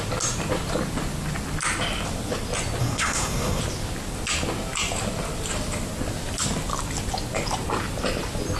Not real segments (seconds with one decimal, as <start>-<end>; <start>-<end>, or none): 2.8-3.6